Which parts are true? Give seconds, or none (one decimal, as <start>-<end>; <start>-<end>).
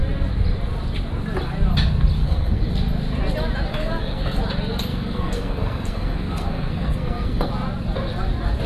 0.0-2.2; 2.7-3.7; 4.4-4.9; 7.5-8.7